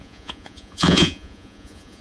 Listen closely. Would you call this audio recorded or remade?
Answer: remade